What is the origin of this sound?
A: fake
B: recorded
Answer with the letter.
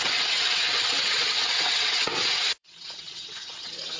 A